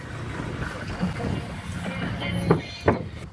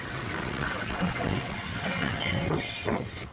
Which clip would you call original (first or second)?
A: first